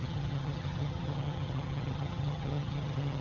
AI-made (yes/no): yes